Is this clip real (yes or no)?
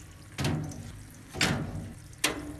yes